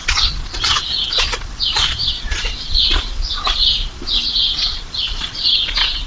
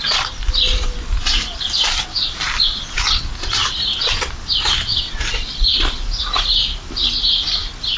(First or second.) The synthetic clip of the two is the first